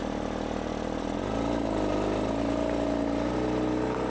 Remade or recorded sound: recorded